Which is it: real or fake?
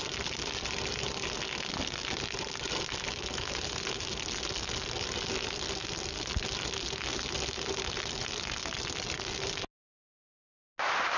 real